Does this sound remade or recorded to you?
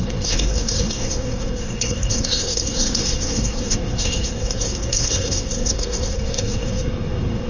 remade